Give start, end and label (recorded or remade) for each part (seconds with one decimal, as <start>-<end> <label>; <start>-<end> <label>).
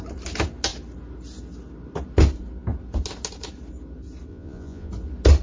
0.0-4.3 recorded; 4.3-4.9 remade; 4.9-5.4 recorded